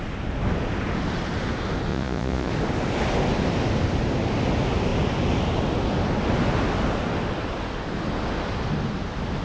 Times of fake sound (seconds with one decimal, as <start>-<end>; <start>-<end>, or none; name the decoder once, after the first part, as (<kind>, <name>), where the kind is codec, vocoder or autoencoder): 1.9-2.5 (vocoder, Vocos)